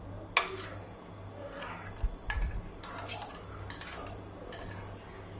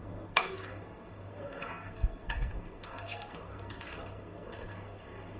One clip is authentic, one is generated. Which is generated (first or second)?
second